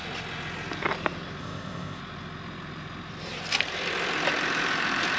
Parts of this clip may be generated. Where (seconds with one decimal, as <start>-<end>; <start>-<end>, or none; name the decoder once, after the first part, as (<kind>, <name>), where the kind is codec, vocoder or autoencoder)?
1.4-2.0 (codec, ZipCodec)